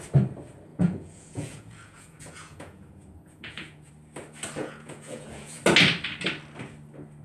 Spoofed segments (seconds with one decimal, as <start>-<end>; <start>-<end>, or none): 0.7-3.9; 4.6-5.6